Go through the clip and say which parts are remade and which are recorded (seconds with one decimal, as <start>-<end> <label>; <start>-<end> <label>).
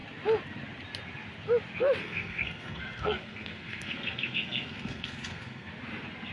0.0-2.0 recorded; 2.0-5.7 remade; 5.7-6.3 recorded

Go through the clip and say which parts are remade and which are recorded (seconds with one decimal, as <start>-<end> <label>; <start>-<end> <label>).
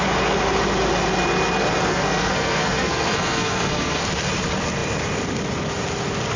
0.0-1.9 recorded; 1.9-4.0 remade; 4.0-6.4 recorded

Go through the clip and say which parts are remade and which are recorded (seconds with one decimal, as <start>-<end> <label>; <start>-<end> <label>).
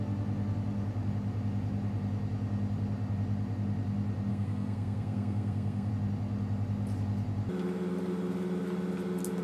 0.0-4.3 recorded; 4.3-5.9 remade; 5.9-9.4 recorded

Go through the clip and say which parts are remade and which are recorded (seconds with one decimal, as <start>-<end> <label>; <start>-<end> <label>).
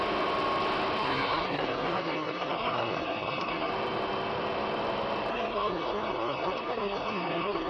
0.0-1.0 recorded; 1.0-3.7 remade; 3.7-5.3 recorded; 5.3-7.7 remade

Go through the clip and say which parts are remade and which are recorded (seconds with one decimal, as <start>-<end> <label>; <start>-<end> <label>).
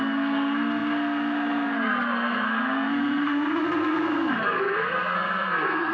0.0-5.9 remade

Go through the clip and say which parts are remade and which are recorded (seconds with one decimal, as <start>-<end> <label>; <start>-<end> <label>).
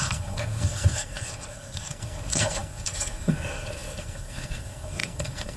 0.0-5.6 remade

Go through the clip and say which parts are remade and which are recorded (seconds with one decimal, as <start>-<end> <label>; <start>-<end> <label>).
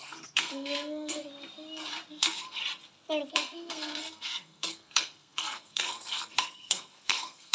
0.0-1.2 remade; 1.2-2.1 recorded; 2.1-2.6 remade; 2.6-3.3 recorded; 3.3-7.5 remade